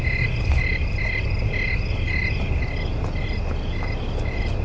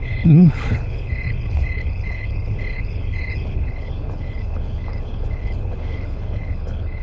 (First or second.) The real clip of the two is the first